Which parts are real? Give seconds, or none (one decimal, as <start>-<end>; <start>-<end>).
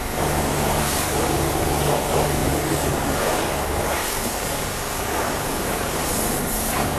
6.0-6.6